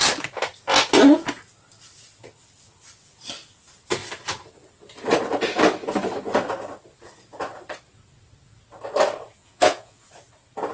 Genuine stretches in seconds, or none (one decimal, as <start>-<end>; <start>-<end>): 0.0-9.4; 10.1-10.7